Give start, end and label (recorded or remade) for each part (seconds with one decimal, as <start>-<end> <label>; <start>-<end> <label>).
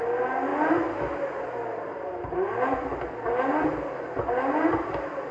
0.0-5.3 recorded